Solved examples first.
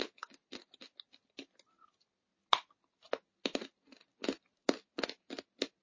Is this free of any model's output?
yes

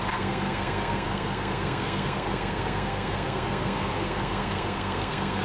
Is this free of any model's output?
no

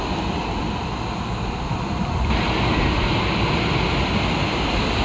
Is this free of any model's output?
yes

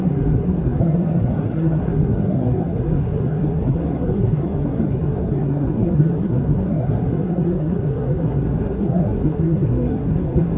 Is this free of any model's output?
no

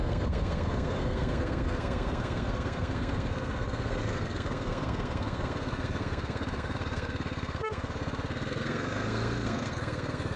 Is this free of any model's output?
no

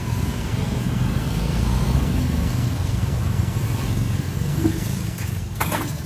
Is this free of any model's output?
no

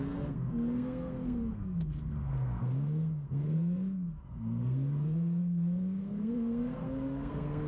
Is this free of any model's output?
no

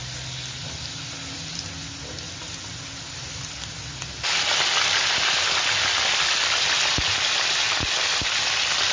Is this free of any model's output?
yes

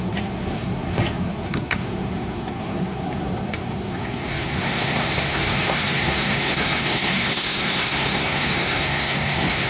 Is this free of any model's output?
no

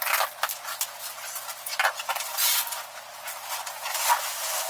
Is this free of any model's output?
yes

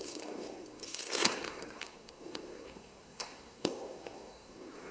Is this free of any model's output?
no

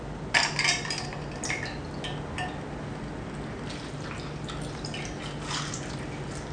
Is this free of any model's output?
yes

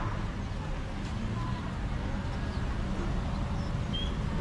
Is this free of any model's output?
yes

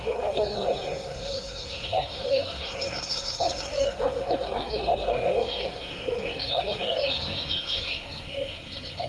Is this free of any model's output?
no